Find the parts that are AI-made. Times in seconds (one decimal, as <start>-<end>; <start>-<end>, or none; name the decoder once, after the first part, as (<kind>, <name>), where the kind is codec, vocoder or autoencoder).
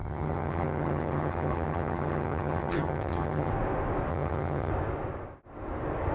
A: 0.0-3.5 (vocoder, HiFi-GAN); 4.1-4.7